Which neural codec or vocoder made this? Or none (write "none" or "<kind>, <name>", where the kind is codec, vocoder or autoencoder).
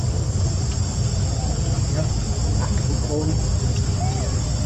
none